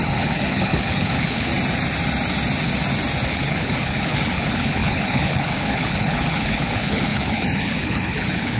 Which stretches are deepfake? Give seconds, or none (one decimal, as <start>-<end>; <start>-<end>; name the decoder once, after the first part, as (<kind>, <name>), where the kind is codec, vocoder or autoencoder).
0.0-1.5 (codec, HILCodec); 3.3-8.6